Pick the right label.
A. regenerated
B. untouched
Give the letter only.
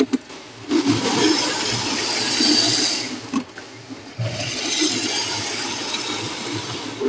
B